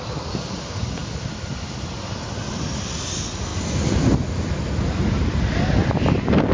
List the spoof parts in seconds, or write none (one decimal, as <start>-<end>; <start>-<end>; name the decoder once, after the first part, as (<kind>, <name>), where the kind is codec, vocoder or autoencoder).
none